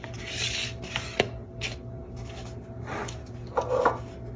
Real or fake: real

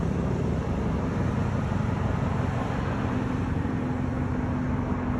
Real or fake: real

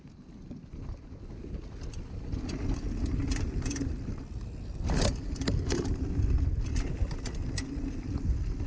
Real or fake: real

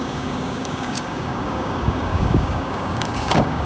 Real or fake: fake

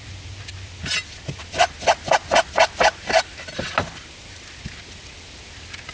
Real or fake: real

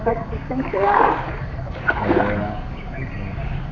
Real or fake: fake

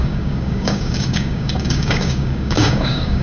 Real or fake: fake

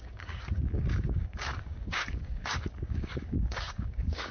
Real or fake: fake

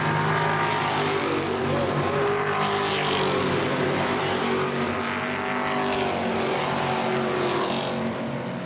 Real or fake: real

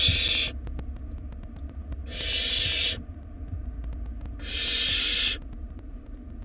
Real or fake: real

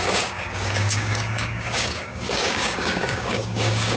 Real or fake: fake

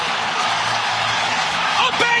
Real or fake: fake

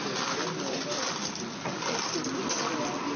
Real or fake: real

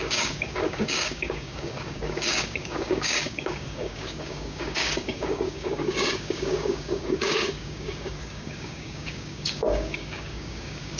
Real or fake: fake